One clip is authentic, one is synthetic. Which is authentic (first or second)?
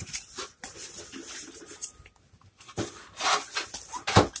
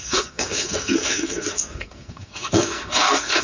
first